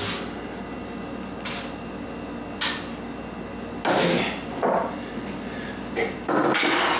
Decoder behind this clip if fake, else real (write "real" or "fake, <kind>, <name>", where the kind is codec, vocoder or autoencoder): real